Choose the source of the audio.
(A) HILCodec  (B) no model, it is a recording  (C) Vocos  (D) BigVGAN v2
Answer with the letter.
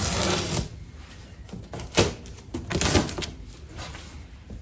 B